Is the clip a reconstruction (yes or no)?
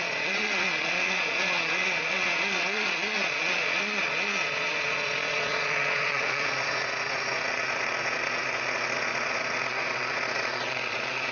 yes